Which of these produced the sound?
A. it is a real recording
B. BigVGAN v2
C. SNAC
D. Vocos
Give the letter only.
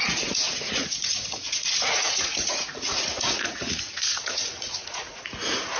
D